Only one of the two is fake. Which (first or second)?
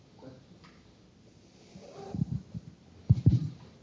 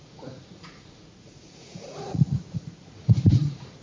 second